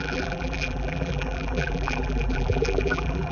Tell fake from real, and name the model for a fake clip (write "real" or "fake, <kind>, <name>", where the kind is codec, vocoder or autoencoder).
fake, vocoder, BigVGAN v2